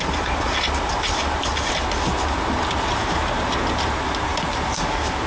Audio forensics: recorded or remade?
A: recorded